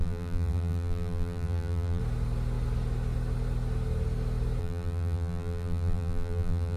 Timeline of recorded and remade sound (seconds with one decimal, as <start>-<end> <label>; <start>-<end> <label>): 0.0-2.0 remade; 2.0-4.6 recorded; 4.6-6.8 remade